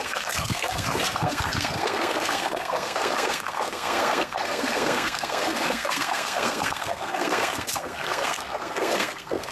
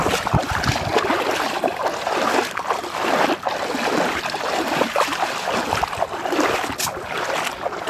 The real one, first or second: second